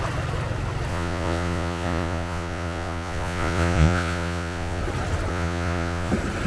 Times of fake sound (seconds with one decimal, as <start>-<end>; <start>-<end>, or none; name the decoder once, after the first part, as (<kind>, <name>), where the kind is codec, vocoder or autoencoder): 0.9-4.8 (vocoder, Vocos); 5.3-6.1